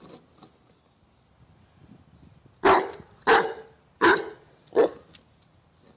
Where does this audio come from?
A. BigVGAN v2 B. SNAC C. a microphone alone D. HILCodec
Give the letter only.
C